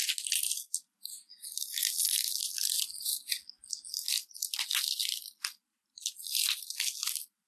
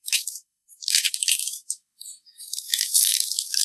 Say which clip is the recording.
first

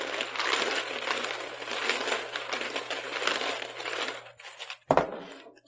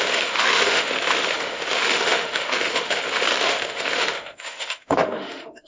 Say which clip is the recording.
first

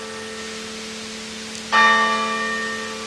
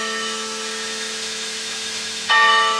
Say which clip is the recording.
first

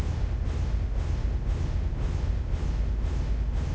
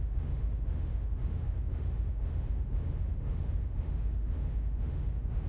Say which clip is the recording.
first